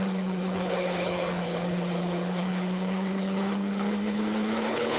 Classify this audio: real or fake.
fake